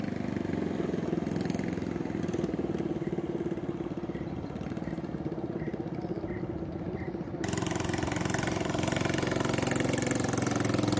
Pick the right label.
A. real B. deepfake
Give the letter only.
A